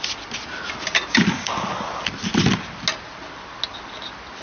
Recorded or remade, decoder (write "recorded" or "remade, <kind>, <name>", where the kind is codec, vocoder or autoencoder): recorded